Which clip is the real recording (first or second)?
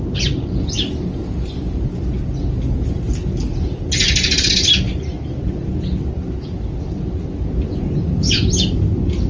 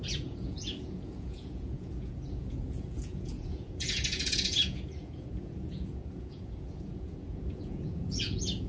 first